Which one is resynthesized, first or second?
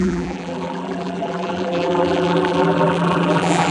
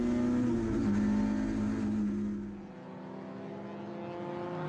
first